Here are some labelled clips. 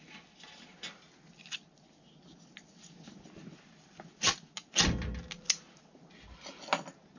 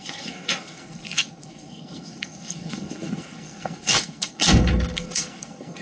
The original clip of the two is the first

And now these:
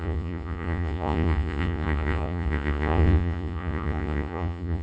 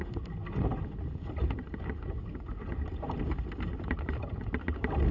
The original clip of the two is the second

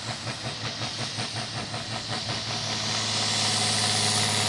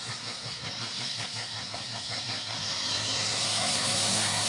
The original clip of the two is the first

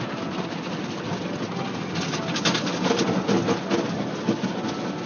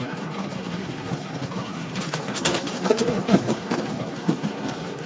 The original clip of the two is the first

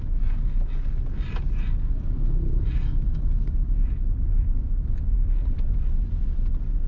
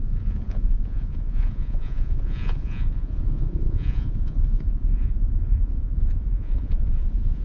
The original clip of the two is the first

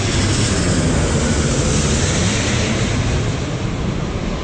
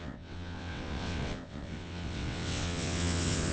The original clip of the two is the first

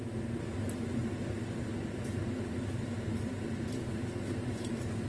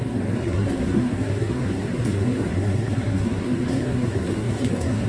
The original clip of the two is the first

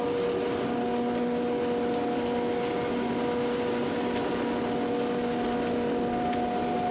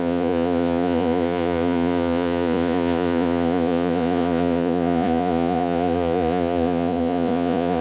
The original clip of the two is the first